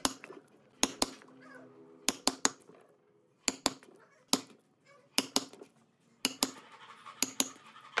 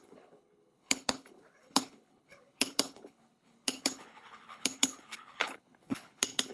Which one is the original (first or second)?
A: first